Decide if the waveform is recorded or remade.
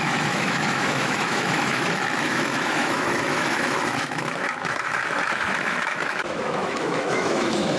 remade